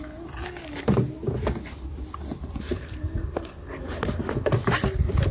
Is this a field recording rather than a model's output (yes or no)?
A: yes